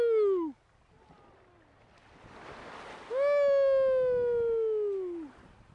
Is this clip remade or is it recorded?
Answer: recorded